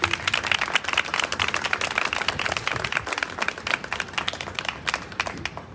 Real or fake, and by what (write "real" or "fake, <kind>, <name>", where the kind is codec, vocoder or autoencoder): real